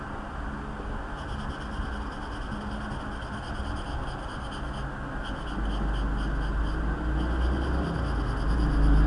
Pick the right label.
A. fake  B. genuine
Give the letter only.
B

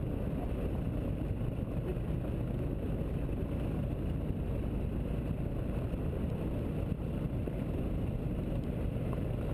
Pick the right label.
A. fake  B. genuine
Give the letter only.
B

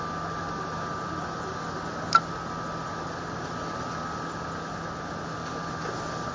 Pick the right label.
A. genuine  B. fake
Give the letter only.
A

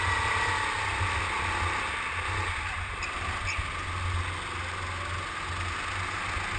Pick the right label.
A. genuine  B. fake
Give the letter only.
A